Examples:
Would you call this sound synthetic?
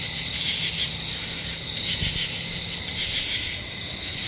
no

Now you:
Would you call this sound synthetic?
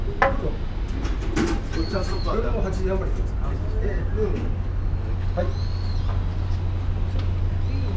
no